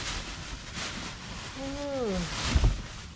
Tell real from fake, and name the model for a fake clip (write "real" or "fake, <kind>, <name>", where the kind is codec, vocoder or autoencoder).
real